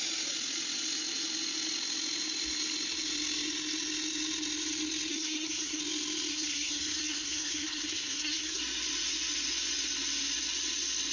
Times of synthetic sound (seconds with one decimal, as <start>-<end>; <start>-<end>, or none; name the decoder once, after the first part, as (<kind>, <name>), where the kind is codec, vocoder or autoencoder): 5.1-5.8 (codec, SNAC); 6.3-8.6

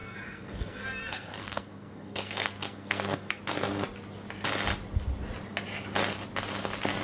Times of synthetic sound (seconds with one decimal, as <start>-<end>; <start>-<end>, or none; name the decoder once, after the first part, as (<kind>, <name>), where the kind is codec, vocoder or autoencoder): 0.0-3.4 (codec, SNAC)